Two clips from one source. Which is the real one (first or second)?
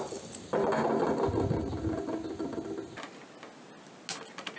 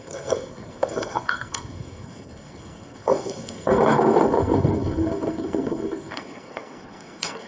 first